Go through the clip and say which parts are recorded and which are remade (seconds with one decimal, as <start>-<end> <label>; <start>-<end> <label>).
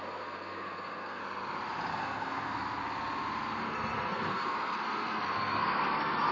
0.0-1.2 remade; 1.2-1.9 recorded; 1.9-2.8 remade; 2.8-3.6 recorded; 3.6-6.3 remade